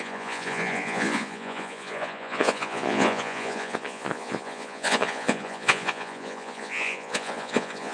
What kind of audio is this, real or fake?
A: fake